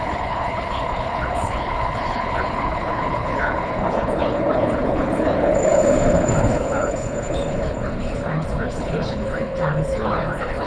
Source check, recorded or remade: remade